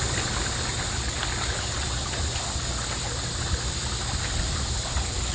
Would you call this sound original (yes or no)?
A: yes